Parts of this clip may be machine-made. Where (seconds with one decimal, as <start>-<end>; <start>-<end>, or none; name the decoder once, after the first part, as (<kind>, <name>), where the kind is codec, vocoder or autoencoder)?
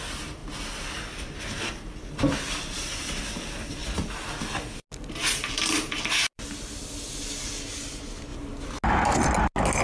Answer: none